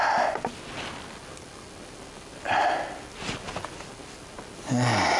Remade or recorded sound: recorded